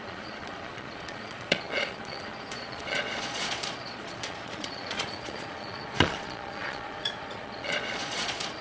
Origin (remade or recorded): remade